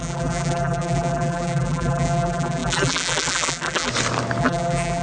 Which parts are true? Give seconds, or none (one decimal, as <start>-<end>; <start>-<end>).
3.9-4.4